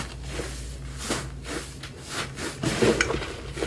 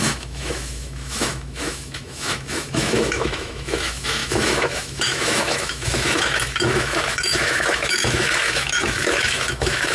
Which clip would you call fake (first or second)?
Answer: second